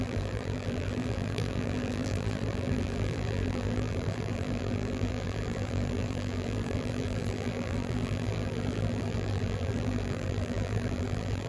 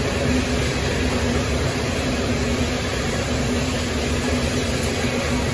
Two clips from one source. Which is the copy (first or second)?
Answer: first